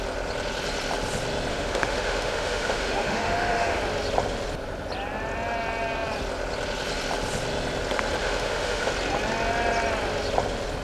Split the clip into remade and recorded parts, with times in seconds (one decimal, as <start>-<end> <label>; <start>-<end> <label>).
0.0-1.5 recorded; 1.5-3.8 remade; 3.8-8.2 recorded; 8.2-8.9 remade; 8.9-10.8 recorded